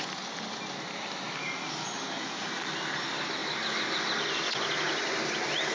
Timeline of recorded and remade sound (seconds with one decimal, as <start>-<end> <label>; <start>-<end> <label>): 0.0-5.7 recorded